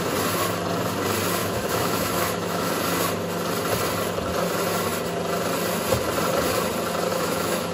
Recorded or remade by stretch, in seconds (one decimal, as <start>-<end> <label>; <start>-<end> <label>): 0.0-1.4 recorded; 1.4-2.7 remade; 2.7-7.1 recorded; 7.1-7.7 remade